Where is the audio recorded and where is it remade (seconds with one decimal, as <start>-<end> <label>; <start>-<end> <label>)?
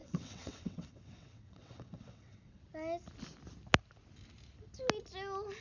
0.0-2.6 remade; 2.6-5.6 recorded